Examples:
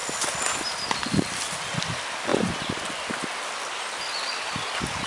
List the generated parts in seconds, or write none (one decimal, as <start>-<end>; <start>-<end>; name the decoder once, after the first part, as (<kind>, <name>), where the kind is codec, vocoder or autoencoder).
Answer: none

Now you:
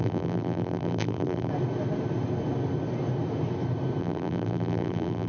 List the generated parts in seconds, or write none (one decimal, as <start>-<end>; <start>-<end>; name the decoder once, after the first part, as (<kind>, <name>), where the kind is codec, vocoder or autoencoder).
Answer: 0.0-1.5 (vocoder, BigVGAN v2); 4.0-5.3

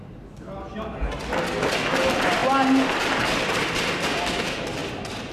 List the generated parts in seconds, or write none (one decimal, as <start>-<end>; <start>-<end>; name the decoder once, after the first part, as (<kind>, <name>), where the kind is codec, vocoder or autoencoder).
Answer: 4.8-5.3 (vocoder, BigVGAN v2)